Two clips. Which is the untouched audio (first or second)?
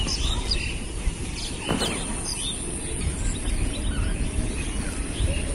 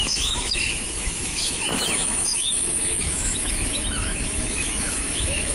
first